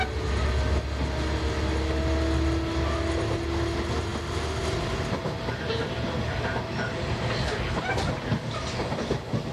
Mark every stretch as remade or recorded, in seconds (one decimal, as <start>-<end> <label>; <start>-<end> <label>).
0.0-9.5 recorded